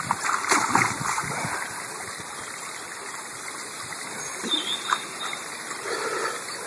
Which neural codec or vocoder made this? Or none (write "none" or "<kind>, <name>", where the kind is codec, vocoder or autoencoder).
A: none